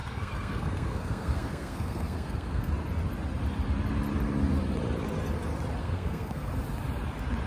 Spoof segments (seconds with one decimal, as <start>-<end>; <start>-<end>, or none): 0.0-2.7; 5.8-6.5